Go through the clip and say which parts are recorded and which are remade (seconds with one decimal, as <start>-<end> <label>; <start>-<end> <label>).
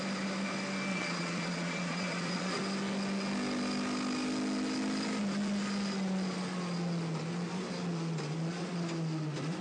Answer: 0.0-0.9 recorded; 0.9-2.6 remade; 2.6-9.6 recorded